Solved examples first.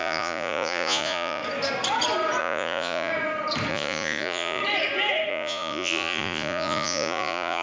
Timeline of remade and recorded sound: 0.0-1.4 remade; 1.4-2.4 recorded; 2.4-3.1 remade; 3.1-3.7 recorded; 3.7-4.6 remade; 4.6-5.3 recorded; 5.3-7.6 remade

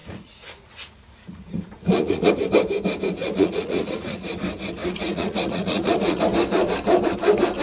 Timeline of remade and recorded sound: 0.0-2.3 remade; 2.3-3.2 recorded; 3.2-4.3 remade; 4.3-4.8 recorded; 4.8-6.2 remade; 6.2-7.6 recorded

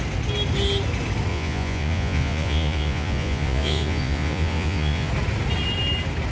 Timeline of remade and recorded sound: 0.0-1.3 recorded; 1.3-5.1 remade; 5.1-6.3 recorded

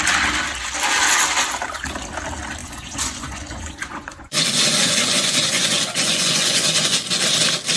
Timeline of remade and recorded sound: 0.0-2.6 recorded; 2.6-7.2 remade; 7.2-7.8 recorded

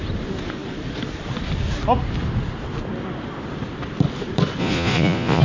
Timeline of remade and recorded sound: 0.0-4.6 recorded; 4.6-5.4 remade